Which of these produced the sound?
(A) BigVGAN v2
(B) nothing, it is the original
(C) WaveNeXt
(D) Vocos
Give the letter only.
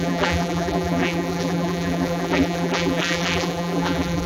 A